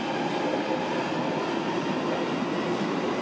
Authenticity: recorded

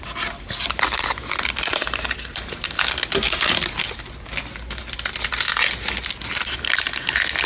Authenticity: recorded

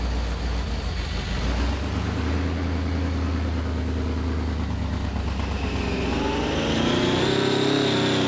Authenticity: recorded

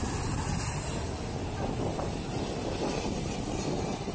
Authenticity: recorded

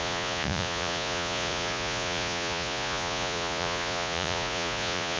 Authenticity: remade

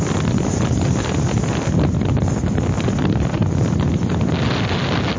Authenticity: recorded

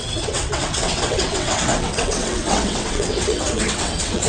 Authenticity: remade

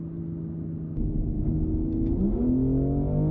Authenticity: recorded